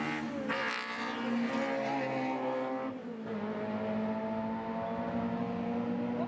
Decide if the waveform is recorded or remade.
recorded